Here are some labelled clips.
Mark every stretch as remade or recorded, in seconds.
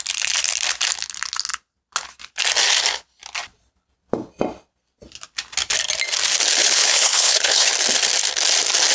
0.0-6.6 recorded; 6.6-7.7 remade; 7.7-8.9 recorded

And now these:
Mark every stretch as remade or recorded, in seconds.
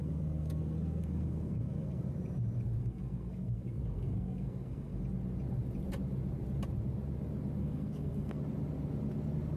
0.0-2.0 remade; 2.0-2.8 recorded; 2.8-5.0 remade; 5.0-7.6 recorded; 7.6-8.4 remade; 8.4-9.6 recorded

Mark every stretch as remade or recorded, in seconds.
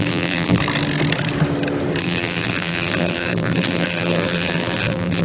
0.0-0.6 remade; 0.6-2.0 recorded; 2.0-5.2 remade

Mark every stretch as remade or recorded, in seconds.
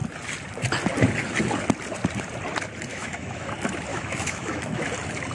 0.0-2.9 recorded; 2.9-3.5 remade; 3.5-3.9 recorded; 3.9-4.8 remade; 4.8-5.3 recorded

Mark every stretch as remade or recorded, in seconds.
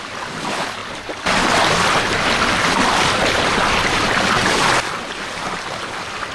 0.0-0.8 recorded; 0.8-3.8 remade; 3.8-4.4 recorded; 4.4-5.6 remade; 5.6-6.3 recorded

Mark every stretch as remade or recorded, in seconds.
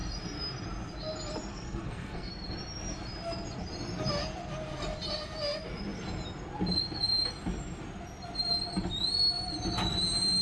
0.0-1.5 recorded; 1.5-2.3 remade; 2.3-10.4 recorded